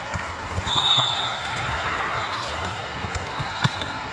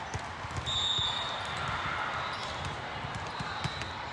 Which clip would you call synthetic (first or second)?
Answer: first